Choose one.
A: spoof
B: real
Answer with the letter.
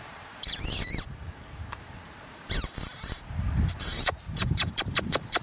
A